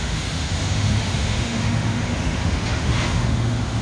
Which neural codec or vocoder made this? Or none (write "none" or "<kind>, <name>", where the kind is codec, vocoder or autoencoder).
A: autoencoder, DAC-VAE